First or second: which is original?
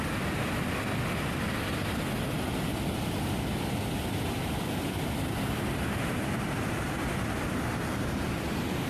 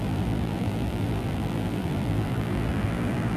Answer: first